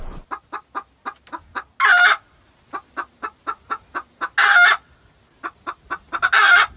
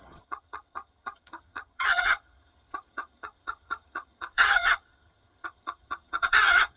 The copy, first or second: second